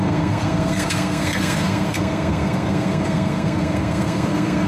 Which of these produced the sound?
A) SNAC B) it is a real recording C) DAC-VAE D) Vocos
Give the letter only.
A